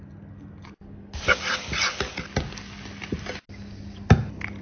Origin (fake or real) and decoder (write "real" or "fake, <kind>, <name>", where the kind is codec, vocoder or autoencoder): real